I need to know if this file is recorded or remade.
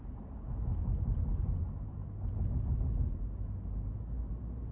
recorded